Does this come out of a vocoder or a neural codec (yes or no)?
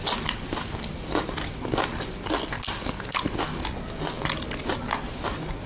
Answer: no